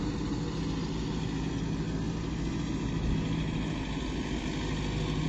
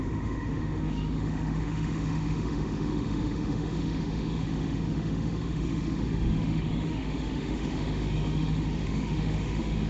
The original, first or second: first